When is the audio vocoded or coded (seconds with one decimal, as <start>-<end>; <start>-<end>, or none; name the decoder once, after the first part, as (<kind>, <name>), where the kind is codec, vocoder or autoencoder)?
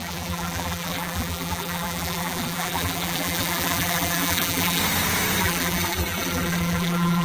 0.0-4.8 (vocoder, BigVGAN v2); 5.4-7.2